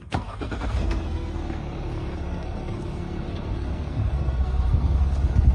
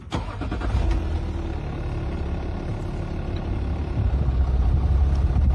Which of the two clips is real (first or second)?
second